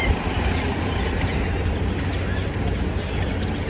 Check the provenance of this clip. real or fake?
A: real